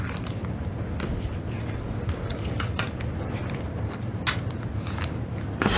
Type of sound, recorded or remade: recorded